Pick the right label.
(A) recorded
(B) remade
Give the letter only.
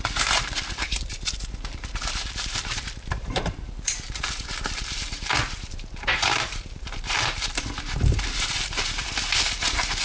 B